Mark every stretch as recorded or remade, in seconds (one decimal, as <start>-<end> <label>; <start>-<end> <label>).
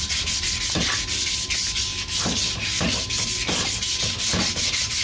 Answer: 0.0-5.0 recorded